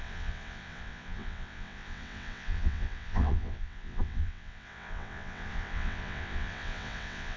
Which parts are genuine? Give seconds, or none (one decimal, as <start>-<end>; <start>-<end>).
none